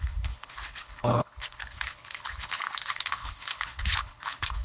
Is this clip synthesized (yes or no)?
yes